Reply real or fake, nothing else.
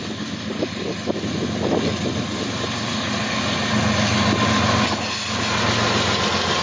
real